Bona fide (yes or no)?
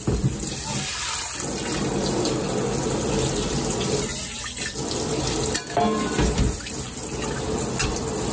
yes